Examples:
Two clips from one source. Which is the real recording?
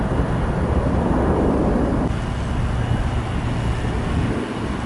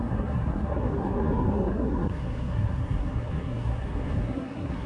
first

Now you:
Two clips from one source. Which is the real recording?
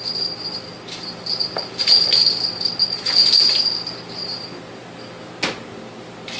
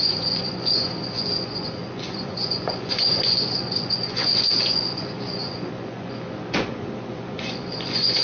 first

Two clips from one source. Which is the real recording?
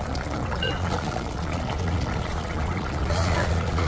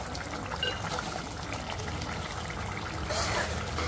second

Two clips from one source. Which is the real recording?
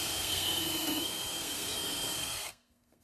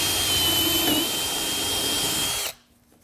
second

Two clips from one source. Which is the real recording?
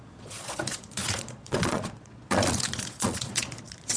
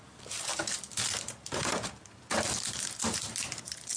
second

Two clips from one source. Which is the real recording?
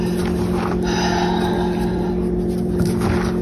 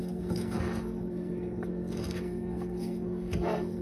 first